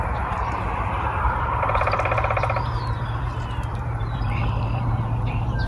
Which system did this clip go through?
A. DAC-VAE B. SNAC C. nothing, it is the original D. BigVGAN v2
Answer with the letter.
D